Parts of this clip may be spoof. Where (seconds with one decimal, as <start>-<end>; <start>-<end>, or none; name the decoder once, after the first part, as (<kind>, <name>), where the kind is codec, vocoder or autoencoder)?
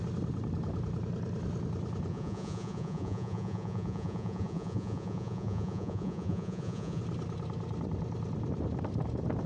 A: 2.1-7.0 (vocoder, Vocos)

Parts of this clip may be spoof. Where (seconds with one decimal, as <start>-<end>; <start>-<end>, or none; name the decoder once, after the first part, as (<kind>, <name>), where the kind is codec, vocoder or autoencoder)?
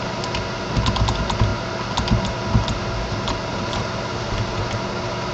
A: none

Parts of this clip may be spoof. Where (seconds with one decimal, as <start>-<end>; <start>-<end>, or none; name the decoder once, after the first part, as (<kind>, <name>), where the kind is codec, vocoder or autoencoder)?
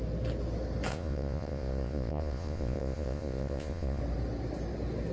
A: 0.9-4.0 (vocoder, Vocos)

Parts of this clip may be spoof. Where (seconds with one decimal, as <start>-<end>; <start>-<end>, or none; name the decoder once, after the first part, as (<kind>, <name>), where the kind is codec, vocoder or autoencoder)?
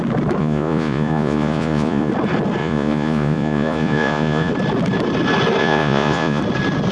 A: 0.4-2.1 (vocoder, Vocos); 2.6-4.5; 5.6-6.4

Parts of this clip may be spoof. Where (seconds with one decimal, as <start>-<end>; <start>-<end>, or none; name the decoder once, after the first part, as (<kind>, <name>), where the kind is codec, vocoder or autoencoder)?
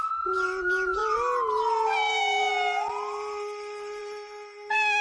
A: none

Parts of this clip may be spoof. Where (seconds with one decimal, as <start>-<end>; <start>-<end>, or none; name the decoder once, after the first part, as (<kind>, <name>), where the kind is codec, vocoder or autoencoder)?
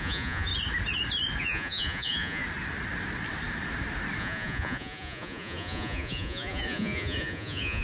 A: 0.0-0.5 (vocoder, Vocos); 1.4-2.4; 4.2-7.8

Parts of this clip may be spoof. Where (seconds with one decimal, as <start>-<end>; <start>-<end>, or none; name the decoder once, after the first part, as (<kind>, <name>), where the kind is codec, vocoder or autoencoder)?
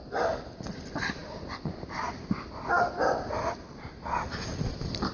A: none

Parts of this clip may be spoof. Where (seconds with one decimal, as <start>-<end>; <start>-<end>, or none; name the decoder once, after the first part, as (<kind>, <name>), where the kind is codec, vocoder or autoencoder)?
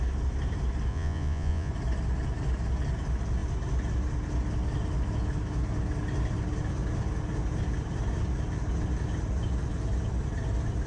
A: 0.9-1.7 (vocoder, Vocos)